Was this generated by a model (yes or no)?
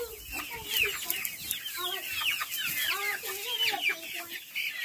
no